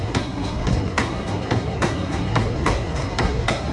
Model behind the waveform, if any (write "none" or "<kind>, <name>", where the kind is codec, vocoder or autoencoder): codec, SNAC